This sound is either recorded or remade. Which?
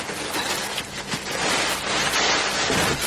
recorded